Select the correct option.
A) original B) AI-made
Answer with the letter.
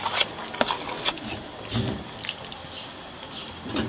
A